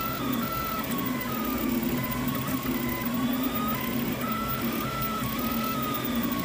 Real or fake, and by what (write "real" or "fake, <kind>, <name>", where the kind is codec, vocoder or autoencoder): real